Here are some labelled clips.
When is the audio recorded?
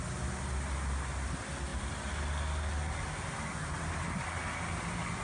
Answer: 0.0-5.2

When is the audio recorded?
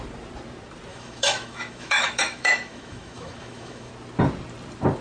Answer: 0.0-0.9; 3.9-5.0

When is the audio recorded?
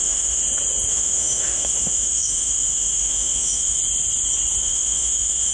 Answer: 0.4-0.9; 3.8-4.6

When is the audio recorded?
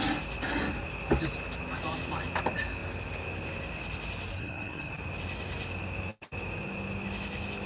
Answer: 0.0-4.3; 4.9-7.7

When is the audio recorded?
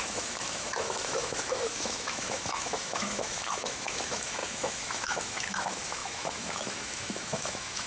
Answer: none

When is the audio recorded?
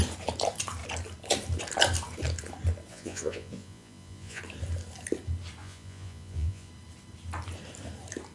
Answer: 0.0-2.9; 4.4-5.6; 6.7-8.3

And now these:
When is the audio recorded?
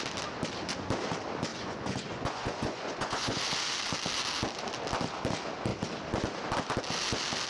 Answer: 0.0-1.5; 3.4-7.5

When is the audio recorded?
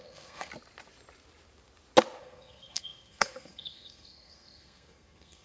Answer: 0.5-2.2